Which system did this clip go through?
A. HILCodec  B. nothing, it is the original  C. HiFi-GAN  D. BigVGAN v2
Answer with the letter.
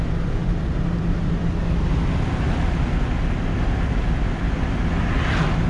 B